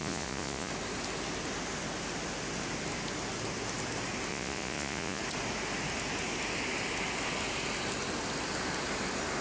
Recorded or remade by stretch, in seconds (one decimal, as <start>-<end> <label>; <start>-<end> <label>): 0.0-0.7 remade; 0.7-4.3 recorded; 4.3-5.2 remade; 5.2-9.4 recorded